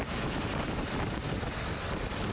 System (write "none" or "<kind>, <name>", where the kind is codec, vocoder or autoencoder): none